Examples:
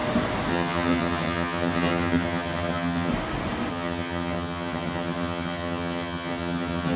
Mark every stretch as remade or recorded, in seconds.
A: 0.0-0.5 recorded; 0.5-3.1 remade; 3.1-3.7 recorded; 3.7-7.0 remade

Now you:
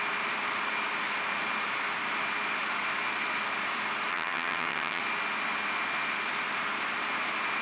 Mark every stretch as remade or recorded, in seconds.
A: 0.0-4.1 recorded; 4.1-5.0 remade; 5.0-7.6 recorded